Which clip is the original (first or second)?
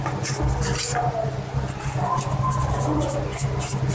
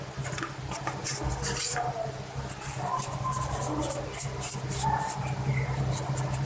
first